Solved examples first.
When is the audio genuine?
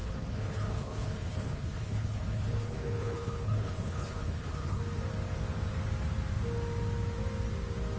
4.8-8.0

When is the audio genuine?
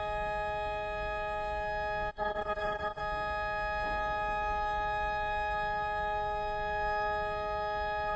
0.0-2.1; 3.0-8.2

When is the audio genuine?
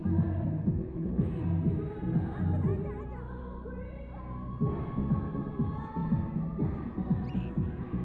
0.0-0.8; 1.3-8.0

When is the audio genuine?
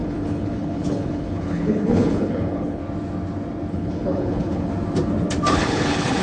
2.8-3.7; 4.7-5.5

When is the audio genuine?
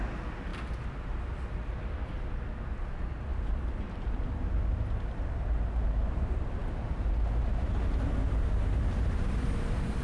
0.0-10.0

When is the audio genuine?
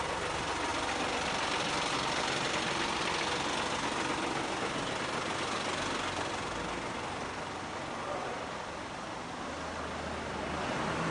0.0-11.1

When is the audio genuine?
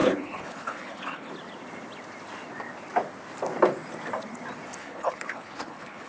1.3-4.8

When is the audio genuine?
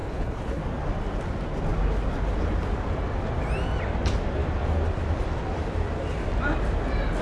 0.6-7.2